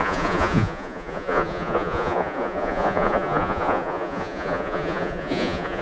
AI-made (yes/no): yes